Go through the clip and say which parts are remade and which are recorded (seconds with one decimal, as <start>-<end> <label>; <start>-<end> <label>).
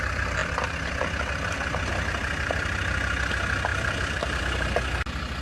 0.0-3.7 recorded; 3.7-4.4 remade; 4.4-5.4 recorded